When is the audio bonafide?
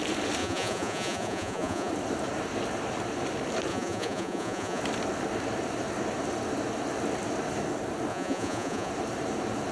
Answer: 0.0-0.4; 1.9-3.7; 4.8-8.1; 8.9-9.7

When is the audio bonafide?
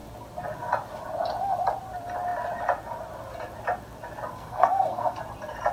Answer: 0.0-4.3; 5.2-5.7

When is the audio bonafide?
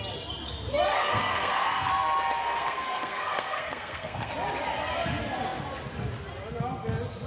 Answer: 0.0-0.9; 1.9-2.4; 4.3-7.3